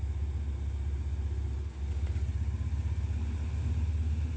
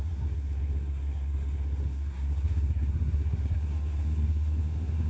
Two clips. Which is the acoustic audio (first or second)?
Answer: first